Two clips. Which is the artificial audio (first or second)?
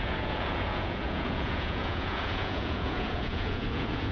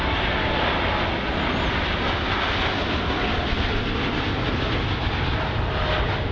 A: first